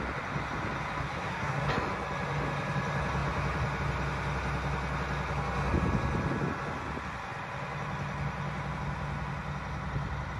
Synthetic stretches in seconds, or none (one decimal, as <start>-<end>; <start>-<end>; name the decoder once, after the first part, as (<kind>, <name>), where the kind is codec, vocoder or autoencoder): 1.0-1.6 (codec, SNAC)